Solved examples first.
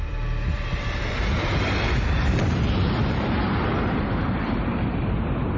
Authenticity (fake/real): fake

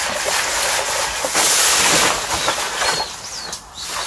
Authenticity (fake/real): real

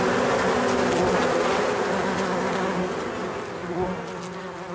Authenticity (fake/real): real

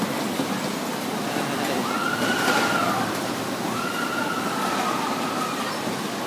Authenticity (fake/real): real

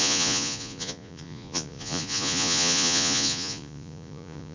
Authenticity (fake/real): fake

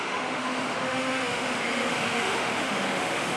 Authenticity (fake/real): fake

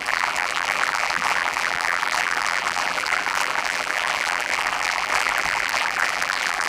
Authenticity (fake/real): fake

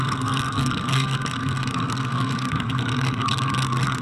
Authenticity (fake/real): fake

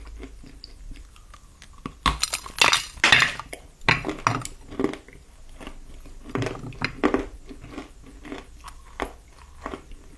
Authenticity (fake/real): real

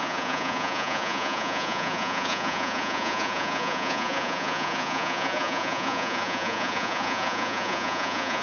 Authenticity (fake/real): fake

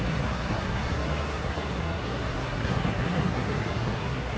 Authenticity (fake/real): fake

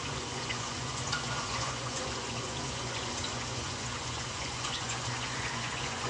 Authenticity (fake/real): fake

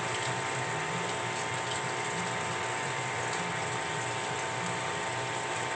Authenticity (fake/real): real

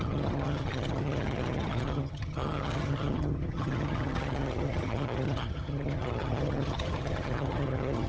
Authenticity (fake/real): fake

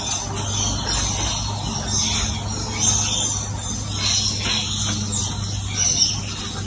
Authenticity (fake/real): real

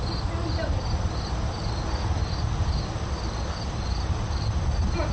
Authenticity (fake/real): real